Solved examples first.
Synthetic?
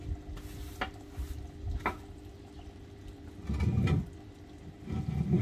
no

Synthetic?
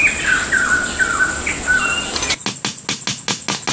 no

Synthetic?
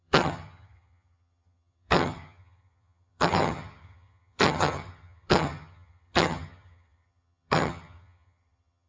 yes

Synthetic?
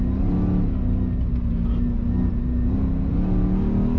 no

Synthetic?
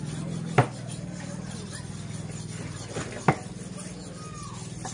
no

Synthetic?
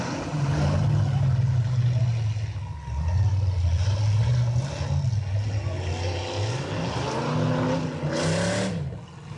no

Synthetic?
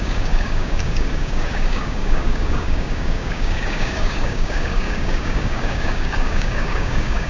yes